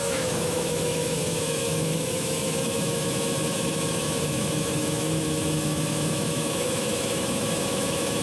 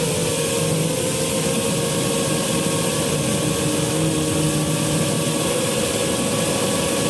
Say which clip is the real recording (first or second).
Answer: second